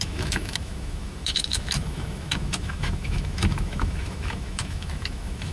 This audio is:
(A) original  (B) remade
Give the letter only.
B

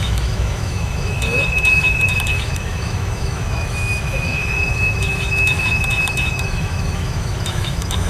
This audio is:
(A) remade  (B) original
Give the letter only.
A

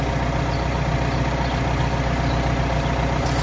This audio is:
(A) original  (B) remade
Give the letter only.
A